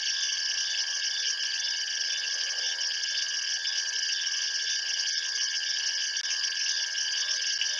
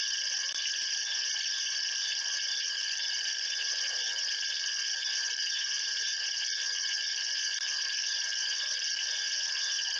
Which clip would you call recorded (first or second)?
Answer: first